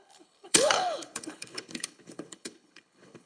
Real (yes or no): no